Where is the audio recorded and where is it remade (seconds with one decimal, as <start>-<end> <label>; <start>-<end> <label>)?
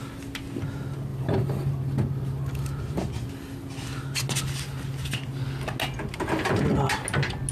0.0-1.1 recorded; 1.1-3.3 remade; 3.3-7.5 recorded